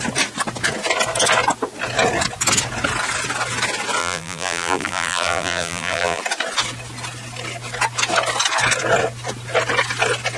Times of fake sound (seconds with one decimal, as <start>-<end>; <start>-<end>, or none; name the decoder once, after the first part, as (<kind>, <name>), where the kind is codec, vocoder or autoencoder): 4.0-6.2 (vocoder, BigVGAN v2)